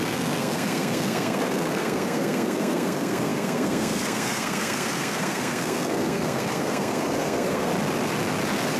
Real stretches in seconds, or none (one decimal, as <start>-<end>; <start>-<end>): 7.7-8.8